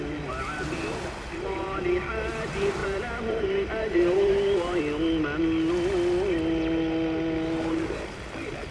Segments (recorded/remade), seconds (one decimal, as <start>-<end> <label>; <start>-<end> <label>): 0.0-2.8 recorded; 2.8-4.8 remade; 4.8-8.7 recorded